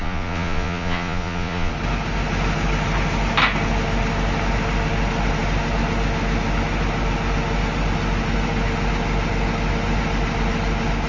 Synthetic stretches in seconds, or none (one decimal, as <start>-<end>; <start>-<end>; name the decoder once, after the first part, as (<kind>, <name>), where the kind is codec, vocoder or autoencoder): 0.0-1.7 (vocoder, Vocos)